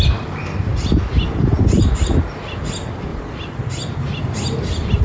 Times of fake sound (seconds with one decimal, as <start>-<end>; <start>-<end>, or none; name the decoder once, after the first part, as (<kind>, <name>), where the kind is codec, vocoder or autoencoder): 3.1-5.0 (vocoder, BigVGAN v2)